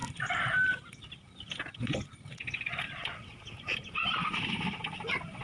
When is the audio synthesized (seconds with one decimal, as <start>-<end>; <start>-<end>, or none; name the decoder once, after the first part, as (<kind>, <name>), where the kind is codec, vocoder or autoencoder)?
3.0-4.8 (vocoder, BigVGAN v2)